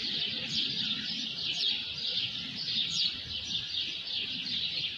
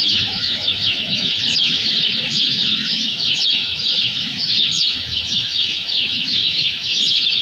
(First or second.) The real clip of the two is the first